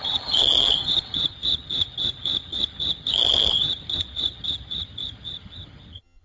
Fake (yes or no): yes